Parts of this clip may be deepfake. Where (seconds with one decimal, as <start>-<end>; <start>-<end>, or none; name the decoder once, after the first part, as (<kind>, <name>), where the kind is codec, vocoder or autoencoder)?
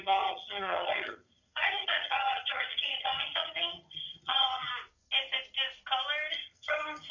0.0-4.7 (vocoder, HiFi-GAN); 6.3-7.1